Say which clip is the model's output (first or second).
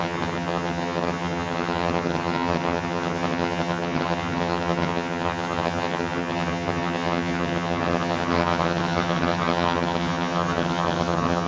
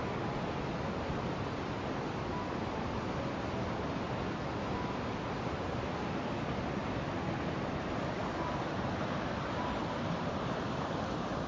first